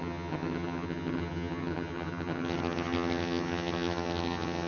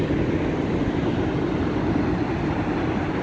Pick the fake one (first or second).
first